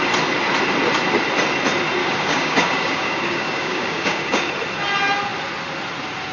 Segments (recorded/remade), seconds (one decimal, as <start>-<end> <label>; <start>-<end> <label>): 0.0-2.0 recorded; 2.0-4.5 remade; 4.5-6.3 recorded